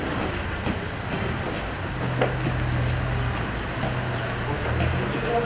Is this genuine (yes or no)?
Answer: yes